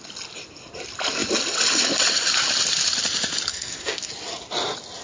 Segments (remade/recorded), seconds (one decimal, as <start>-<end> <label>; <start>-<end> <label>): 0.0-3.5 recorded; 3.5-4.1 remade; 4.1-5.0 recorded